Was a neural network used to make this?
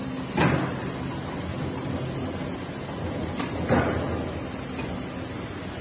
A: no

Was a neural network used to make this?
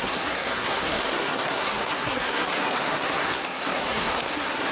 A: yes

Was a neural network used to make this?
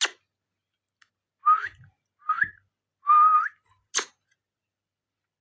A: no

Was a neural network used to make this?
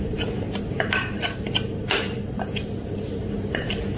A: no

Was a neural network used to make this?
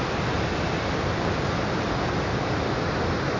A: no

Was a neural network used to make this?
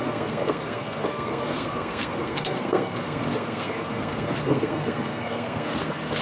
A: yes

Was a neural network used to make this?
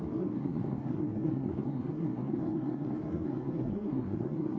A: yes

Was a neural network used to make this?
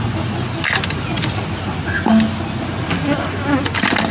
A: no